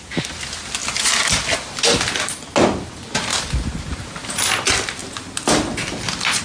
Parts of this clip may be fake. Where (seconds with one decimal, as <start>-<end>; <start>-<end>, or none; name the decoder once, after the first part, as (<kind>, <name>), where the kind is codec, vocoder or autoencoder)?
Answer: 0.8-1.4 (vocoder, BigVGAN v2); 3.3-4.4